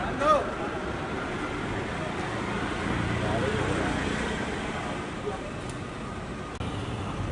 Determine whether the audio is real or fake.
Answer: real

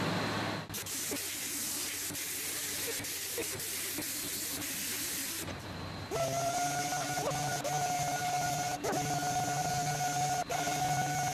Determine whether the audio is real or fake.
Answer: real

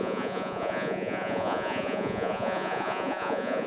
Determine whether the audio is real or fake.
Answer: fake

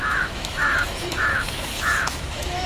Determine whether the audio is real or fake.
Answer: fake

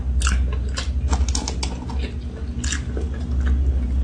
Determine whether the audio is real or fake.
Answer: real